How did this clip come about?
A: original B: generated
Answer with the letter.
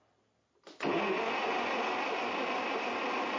A